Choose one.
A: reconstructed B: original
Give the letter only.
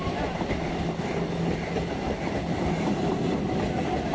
B